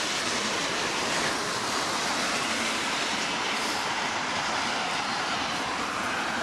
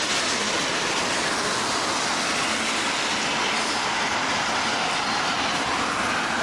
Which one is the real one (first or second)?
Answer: second